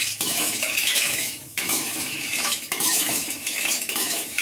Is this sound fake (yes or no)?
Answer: yes